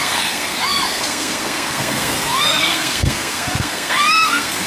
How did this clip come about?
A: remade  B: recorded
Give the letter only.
A